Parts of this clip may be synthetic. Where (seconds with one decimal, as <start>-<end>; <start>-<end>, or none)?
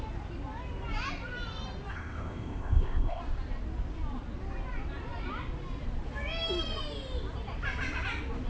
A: 1.9-3.2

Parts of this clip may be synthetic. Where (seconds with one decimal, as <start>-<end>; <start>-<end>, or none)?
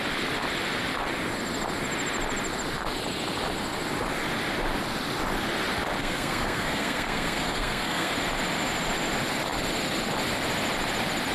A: 6.0-8.1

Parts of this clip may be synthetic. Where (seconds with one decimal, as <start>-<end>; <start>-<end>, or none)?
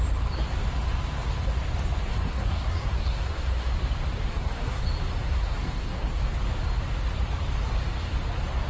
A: 2.1-3.7; 4.3-4.8; 5.2-6.2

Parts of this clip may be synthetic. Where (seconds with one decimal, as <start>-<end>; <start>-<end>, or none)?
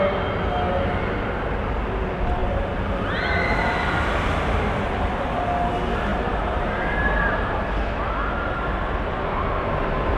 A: 6.1-7.7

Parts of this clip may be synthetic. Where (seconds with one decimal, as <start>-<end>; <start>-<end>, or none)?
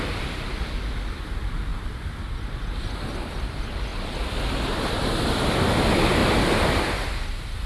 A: none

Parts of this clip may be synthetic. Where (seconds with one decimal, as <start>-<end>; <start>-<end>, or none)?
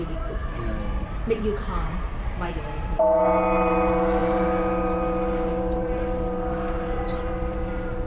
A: 0.0-8.1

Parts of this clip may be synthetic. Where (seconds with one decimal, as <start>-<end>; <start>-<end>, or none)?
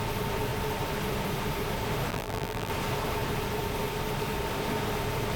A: 2.1-2.7